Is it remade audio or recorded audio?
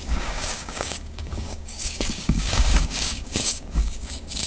remade